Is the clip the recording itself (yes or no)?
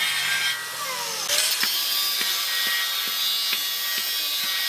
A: yes